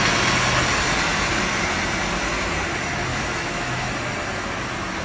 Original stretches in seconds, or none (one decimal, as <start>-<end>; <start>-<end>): 0.0-3.1; 3.9-5.0